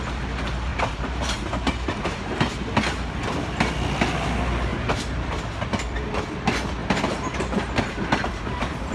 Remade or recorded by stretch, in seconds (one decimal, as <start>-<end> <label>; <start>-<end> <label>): 0.0-0.7 recorded; 0.7-2.5 remade; 2.5-4.7 recorded; 4.7-5.4 remade; 5.4-6.8 recorded; 6.8-7.8 remade; 7.8-8.9 recorded

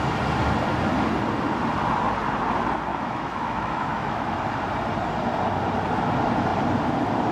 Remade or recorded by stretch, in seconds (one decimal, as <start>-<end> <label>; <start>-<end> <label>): 0.0-2.9 recorded; 2.9-4.4 remade; 4.4-7.3 recorded

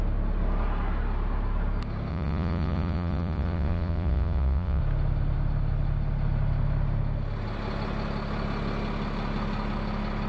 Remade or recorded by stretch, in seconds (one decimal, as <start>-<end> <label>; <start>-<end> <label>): 0.0-2.1 recorded; 2.1-4.8 remade; 4.8-10.3 recorded

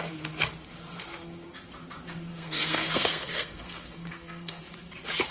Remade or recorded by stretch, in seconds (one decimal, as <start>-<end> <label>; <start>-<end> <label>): 0.0-2.3 recorded; 2.3-4.6 remade; 4.6-5.3 recorded

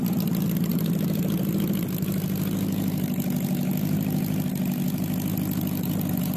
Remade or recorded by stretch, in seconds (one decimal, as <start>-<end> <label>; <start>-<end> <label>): 0.0-6.4 recorded

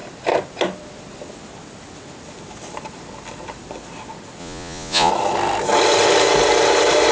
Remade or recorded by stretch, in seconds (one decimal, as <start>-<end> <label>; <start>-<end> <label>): 0.0-4.4 recorded; 4.4-5.1 remade; 5.1-7.1 recorded